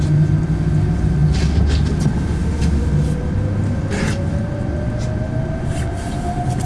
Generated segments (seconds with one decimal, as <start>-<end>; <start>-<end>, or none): none